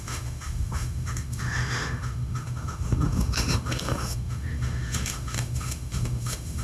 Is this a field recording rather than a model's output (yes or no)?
no